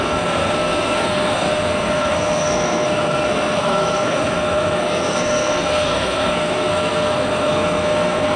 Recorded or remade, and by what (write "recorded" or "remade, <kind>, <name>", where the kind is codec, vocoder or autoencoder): remade, codec, SNAC